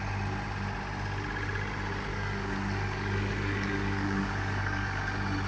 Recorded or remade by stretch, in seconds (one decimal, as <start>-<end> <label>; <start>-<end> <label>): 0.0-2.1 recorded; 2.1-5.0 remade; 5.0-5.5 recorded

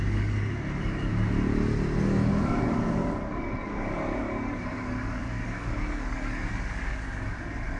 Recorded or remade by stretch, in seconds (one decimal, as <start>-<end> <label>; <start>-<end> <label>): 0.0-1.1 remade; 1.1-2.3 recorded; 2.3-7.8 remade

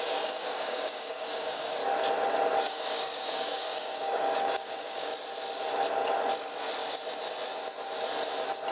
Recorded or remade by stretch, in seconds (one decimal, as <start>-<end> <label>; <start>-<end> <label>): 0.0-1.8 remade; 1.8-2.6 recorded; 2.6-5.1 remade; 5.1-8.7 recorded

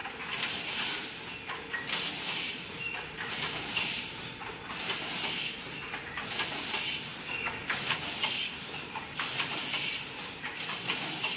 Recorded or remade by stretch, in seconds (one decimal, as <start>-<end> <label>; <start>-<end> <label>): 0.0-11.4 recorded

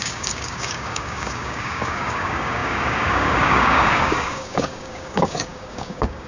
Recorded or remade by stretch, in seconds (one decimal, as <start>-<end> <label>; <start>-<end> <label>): 0.0-6.3 remade